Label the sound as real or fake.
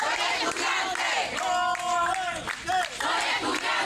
real